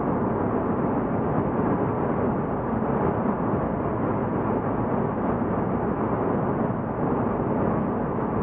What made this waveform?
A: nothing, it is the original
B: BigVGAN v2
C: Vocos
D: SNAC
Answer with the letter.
A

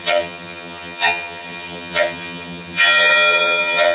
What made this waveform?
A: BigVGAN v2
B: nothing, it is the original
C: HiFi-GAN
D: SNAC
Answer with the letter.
C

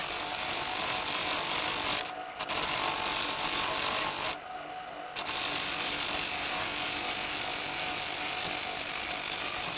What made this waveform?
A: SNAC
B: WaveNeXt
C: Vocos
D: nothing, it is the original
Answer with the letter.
D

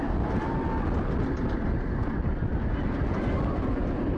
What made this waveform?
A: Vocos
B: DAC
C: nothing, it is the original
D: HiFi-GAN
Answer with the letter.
C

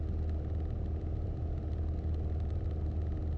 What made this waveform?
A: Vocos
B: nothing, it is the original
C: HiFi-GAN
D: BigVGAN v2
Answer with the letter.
B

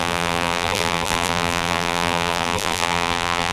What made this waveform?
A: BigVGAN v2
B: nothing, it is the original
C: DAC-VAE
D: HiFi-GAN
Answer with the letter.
A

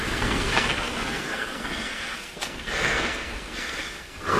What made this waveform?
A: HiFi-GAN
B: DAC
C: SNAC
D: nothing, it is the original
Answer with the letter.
C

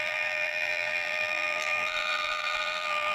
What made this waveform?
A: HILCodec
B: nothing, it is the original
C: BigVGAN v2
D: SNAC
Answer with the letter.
C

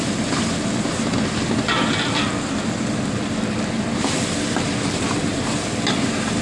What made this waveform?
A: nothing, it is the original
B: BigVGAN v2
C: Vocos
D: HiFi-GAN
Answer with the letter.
B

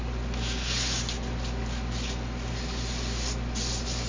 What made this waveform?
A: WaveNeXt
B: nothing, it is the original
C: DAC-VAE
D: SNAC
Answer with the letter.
B